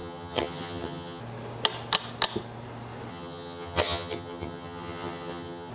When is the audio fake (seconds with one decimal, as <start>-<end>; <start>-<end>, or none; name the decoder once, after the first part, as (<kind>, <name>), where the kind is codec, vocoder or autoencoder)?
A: 0.0-1.2 (vocoder, HiFi-GAN); 3.1-5.7